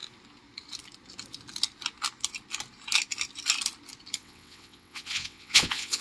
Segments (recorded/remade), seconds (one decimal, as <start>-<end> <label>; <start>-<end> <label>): 0.0-4.2 recorded; 4.2-6.0 remade